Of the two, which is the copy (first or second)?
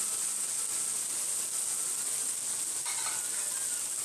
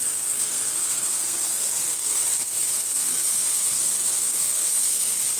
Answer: second